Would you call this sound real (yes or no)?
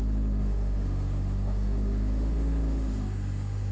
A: no